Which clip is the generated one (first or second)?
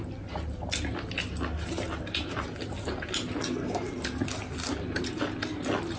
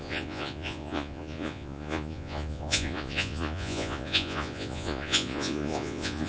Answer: second